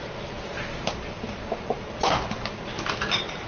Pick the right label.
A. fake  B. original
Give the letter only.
B